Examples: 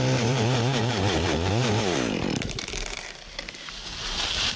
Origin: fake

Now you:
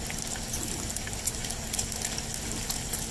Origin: real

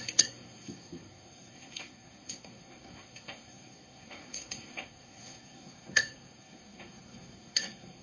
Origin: fake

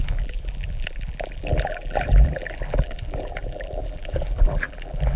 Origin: fake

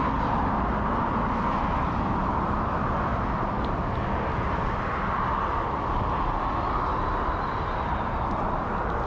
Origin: real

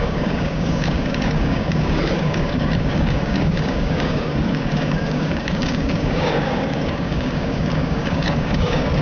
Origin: fake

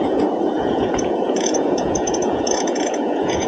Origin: fake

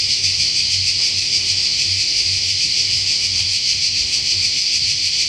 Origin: fake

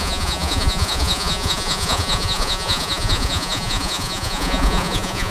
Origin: fake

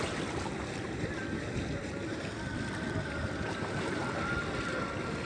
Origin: real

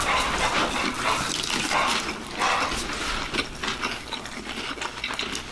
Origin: real